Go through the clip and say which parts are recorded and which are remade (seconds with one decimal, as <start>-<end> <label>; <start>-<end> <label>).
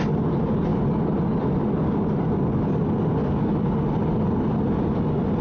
0.0-5.4 recorded